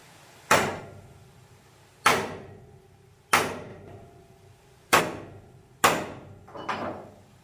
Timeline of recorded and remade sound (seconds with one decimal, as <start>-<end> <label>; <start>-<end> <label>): 0.0-0.8 remade; 0.8-3.7 recorded; 3.7-5.0 remade; 5.0-7.4 recorded

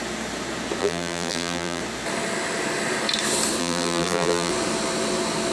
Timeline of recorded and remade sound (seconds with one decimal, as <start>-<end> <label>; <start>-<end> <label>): 0.0-0.8 recorded; 0.8-1.8 remade; 1.8-3.6 recorded; 3.6-4.5 remade; 4.5-5.5 recorded

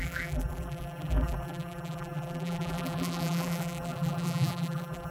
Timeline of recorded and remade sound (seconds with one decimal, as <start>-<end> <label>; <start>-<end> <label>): 0.0-5.1 remade

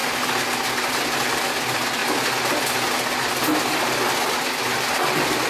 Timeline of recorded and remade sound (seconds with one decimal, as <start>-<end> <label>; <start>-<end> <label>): 0.0-5.5 recorded

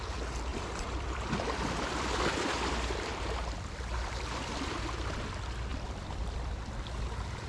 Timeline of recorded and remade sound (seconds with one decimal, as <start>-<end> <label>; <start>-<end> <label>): 0.0-0.5 recorded; 0.5-4.8 remade; 4.8-5.7 recorded; 5.7-6.5 remade; 6.5-7.5 recorded